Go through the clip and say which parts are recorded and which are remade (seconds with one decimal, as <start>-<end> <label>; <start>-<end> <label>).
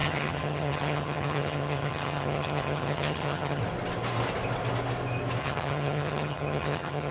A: 0.0-3.6 remade; 3.6-5.4 recorded; 5.4-7.1 remade